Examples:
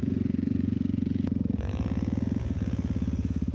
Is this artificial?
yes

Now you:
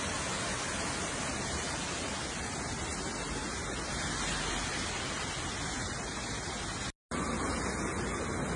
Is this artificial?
no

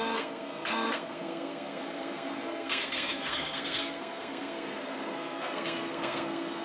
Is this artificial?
yes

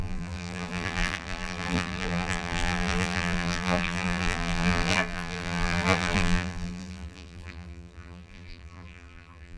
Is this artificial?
yes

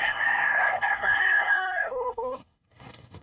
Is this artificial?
yes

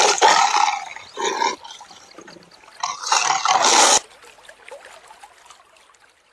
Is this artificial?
no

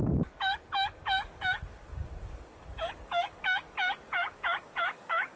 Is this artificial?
yes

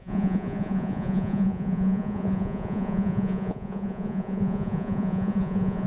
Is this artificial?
yes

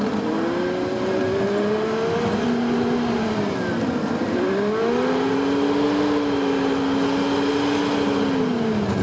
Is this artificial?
no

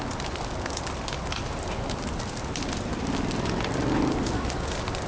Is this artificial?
no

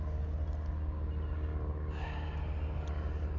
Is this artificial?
no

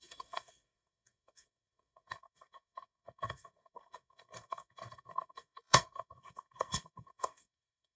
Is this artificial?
yes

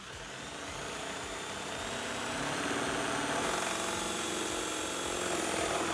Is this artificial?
no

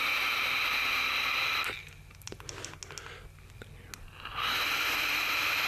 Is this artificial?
no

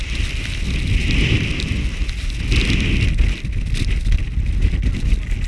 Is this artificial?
no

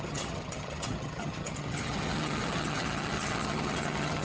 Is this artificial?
yes